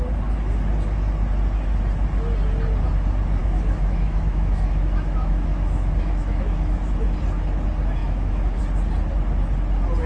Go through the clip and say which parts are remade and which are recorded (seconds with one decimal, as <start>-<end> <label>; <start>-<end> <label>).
0.0-3.4 recorded; 3.4-6.9 remade; 6.9-8.0 recorded; 8.0-8.6 remade; 8.6-10.1 recorded